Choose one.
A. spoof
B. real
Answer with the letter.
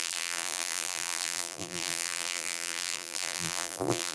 A